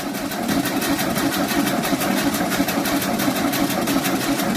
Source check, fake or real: real